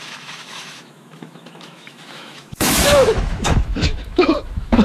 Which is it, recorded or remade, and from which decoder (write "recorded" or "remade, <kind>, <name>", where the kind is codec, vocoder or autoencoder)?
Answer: remade, autoencoder, DAC-VAE